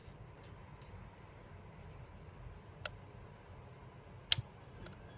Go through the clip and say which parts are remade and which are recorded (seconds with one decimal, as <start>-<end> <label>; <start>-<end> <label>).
0.0-5.2 recorded